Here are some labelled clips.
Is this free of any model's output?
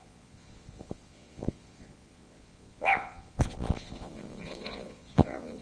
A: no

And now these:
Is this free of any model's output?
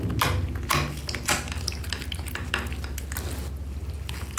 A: yes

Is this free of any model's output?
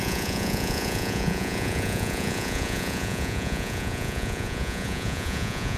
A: no